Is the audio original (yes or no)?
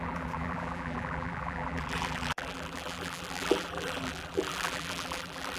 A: no